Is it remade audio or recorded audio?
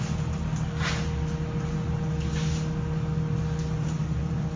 recorded